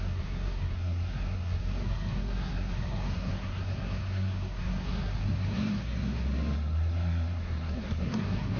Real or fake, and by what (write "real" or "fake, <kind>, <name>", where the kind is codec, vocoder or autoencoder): fake, codec, SNAC